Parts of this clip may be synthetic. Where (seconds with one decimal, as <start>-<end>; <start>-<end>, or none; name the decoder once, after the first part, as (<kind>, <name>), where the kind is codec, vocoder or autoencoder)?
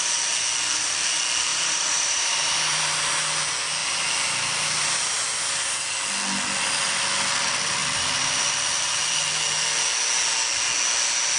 1.5-2.8 (vocoder, BigVGAN v2)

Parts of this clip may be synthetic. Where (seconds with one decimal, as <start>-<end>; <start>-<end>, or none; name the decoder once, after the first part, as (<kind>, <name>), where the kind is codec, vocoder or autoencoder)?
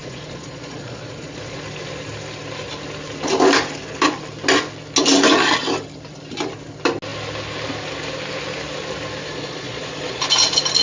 0.0-1.6 (vocoder, Vocos); 9.2-10.2